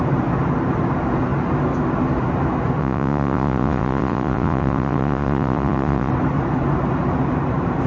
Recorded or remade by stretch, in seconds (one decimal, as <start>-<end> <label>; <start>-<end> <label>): 0.0-2.8 recorded; 2.8-6.1 remade; 6.1-7.9 recorded